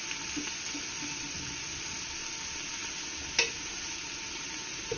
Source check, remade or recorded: recorded